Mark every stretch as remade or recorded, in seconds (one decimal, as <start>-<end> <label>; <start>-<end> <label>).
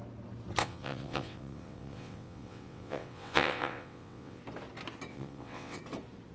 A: 0.0-0.6 recorded; 0.6-4.4 remade; 4.4-5.1 recorded; 5.1-5.8 remade; 5.8-6.3 recorded